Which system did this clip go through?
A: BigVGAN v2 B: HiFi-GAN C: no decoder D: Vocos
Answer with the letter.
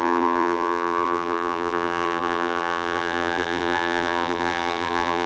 A